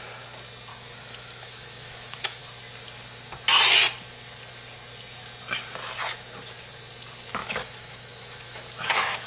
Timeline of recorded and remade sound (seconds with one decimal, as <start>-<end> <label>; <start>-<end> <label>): 0.0-0.7 recorded; 0.7-2.4 remade; 2.4-7.4 recorded; 7.4-9.3 remade